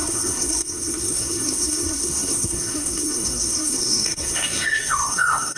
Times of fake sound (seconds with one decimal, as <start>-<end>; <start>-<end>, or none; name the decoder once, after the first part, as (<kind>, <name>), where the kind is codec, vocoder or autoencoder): 0.0-5.6 (codec, SNAC)